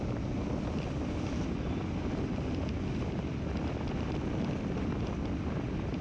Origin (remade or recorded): recorded